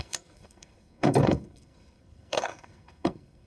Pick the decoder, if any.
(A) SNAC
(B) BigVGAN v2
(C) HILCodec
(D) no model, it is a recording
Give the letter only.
A